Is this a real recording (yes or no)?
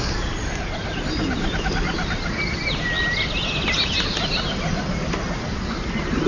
yes